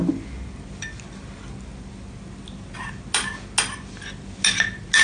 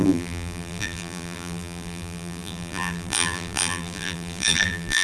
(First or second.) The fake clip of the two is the second